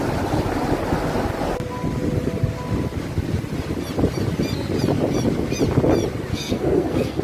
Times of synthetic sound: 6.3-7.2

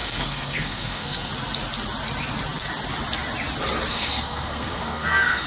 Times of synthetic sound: 0.0-1.3; 3.9-5.5

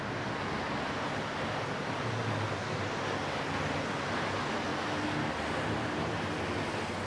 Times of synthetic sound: none

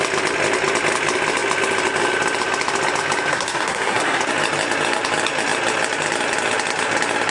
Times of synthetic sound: 3.3-4.2

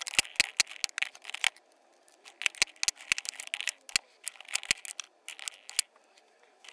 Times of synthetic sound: none

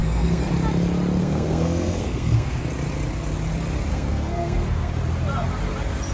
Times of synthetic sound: 0.0-0.5; 1.2-2.6; 3.9-4.9

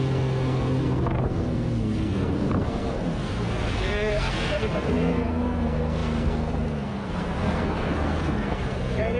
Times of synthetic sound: 0.0-9.2

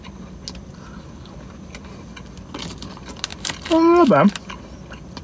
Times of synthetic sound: none